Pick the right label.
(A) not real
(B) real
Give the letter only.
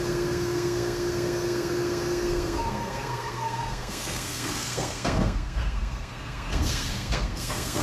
A